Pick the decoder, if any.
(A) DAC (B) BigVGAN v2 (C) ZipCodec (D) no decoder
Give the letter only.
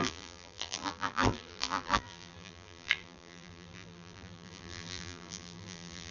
B